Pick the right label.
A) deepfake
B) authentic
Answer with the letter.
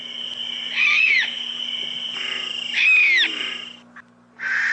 B